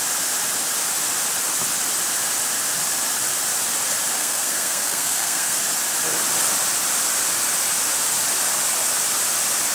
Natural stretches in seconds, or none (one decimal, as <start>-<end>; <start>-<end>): 0.0-4.2; 5.6-9.7